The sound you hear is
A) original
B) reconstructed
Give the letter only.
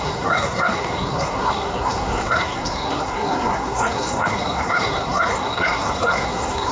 B